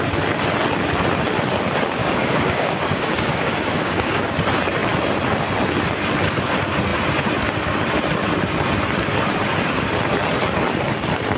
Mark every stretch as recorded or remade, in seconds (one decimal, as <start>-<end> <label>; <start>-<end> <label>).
0.0-2.0 recorded; 2.0-4.2 remade; 4.2-11.4 recorded